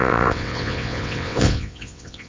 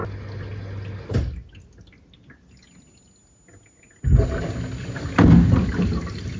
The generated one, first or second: first